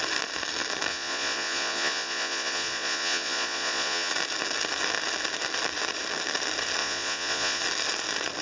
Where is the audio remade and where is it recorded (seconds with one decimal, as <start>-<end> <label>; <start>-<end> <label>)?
0.0-0.9 recorded; 0.9-4.1 remade; 4.1-6.8 recorded; 6.8-7.6 remade; 7.6-8.4 recorded